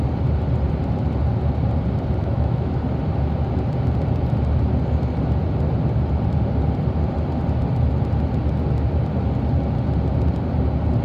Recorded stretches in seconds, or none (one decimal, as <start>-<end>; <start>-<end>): 0.0-2.2; 2.8-11.0